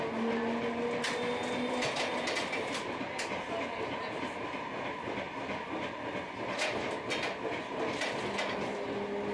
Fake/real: real